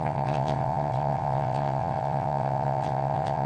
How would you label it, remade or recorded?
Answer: remade